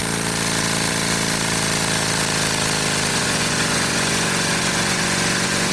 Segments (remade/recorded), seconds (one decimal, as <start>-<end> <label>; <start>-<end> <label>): 0.0-3.1 recorded; 3.1-5.7 remade